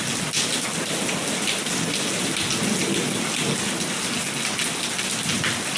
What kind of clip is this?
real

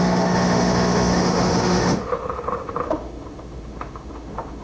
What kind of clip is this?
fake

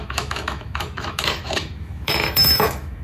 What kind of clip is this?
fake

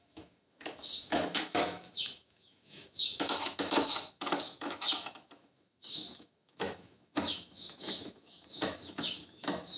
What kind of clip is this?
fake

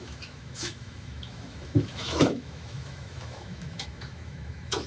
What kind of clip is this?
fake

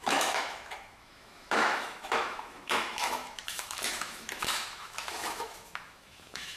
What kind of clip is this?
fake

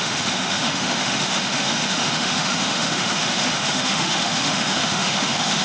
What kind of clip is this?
fake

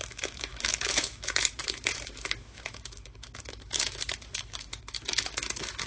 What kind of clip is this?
fake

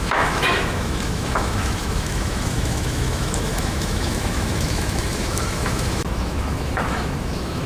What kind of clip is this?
fake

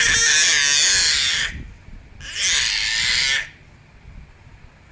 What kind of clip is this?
real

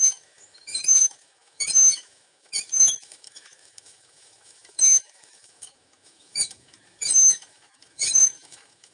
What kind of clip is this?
fake